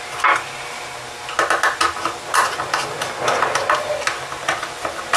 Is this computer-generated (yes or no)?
no